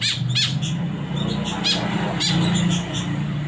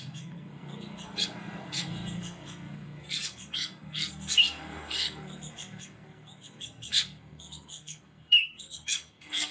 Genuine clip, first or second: first